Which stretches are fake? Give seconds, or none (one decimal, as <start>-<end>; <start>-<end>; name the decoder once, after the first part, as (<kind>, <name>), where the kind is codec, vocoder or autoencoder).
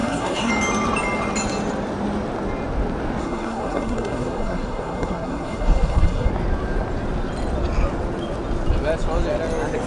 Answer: 0.0-0.5 (codec, SNAC); 3.2-6.3